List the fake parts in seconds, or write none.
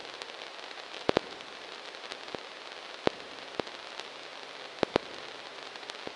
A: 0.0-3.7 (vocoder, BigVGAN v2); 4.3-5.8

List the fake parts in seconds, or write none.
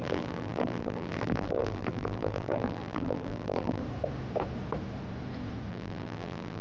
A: 0.0-3.8 (vocoder, BigVGAN v2); 5.7-6.6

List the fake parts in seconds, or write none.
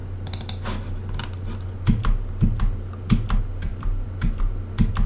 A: 3.7-4.4 (vocoder, BigVGAN v2)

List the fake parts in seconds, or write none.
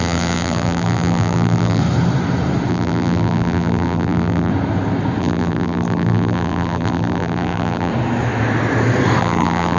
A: 0.0-1.8 (vocoder, BigVGAN v2); 2.7-4.5; 5.2-7.9; 9.2-9.8